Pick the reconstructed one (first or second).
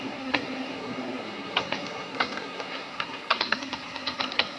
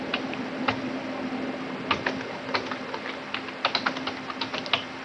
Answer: first